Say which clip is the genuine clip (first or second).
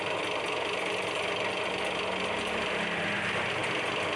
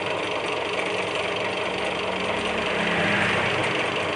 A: first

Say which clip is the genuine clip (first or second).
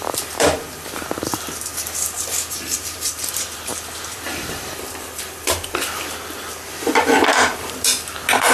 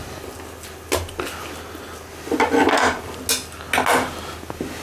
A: second